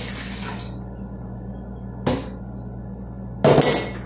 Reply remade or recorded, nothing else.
recorded